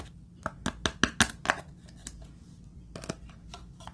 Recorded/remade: recorded